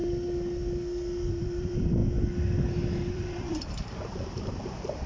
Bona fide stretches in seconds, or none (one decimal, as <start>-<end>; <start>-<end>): 0.0-1.3; 2.0-3.1